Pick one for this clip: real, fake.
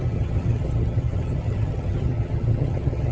fake